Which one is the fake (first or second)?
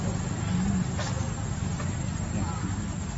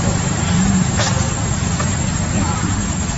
second